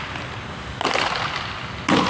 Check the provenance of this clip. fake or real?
real